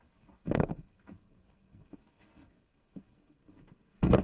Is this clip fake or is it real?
fake